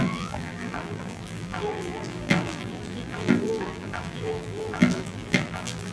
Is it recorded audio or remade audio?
remade